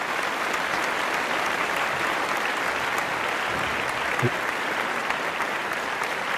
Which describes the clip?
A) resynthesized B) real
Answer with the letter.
A